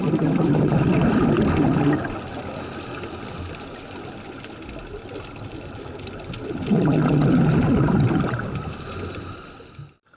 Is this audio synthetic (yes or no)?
no